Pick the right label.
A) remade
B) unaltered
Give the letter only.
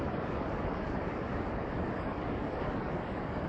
A